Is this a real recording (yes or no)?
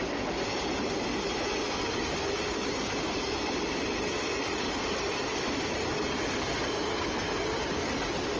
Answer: yes